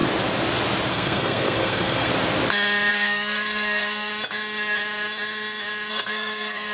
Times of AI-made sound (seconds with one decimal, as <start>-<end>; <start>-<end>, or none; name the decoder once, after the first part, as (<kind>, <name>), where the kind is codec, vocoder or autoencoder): 0.9-2.1 (codec, SNAC); 2.9-4.1; 5.9-6.7